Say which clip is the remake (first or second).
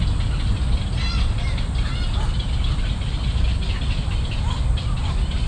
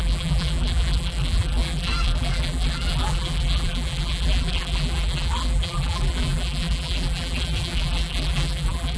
second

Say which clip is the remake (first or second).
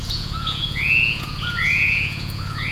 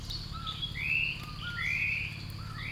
first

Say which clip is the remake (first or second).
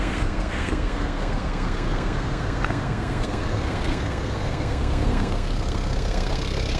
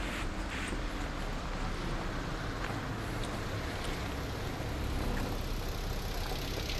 first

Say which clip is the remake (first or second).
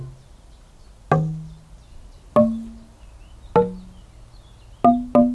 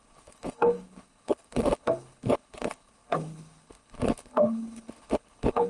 second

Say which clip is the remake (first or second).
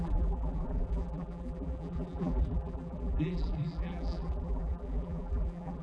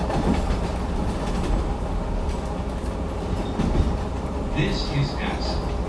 first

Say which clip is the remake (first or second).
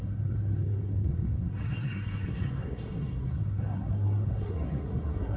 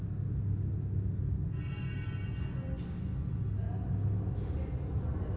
first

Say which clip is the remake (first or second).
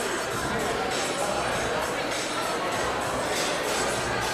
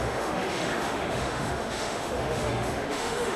second